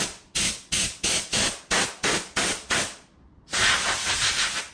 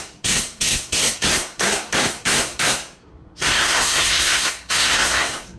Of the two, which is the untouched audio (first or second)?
first